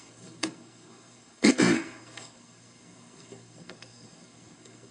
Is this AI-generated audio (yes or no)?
yes